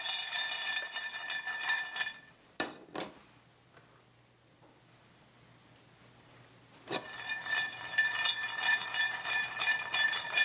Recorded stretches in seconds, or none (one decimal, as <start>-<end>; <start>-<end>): 0.0-9.1